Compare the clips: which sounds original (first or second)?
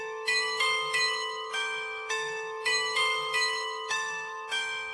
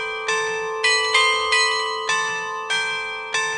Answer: second